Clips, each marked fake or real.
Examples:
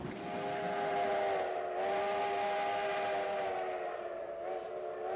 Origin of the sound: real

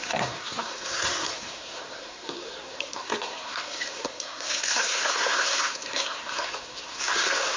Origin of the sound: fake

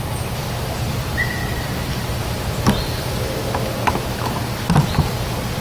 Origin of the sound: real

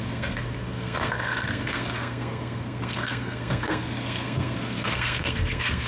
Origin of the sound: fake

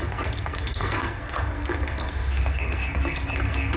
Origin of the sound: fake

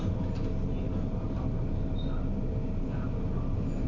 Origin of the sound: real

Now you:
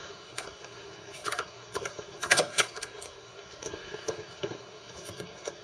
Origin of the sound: fake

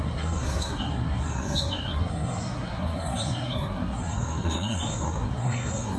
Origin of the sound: fake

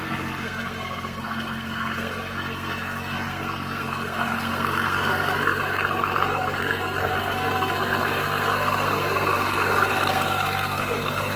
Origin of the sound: fake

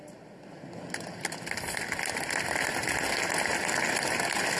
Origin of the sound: real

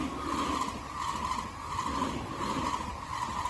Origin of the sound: real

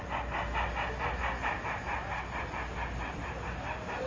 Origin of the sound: real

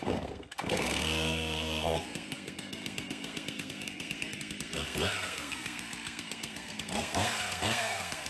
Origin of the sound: fake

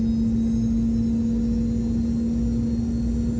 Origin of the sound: real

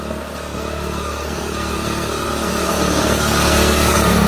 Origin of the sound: fake